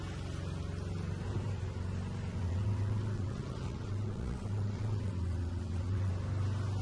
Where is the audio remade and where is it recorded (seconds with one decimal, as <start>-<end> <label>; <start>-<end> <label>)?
0.0-2.3 recorded; 2.3-6.1 remade; 6.1-6.8 recorded